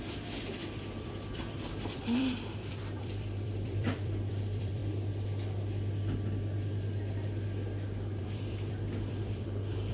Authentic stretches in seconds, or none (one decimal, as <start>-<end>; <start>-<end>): 4.8-8.2